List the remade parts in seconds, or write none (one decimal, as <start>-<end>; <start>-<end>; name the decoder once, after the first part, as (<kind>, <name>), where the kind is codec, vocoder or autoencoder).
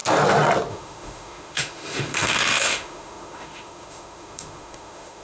0.7-5.2 (autoencoder, DAC-VAE)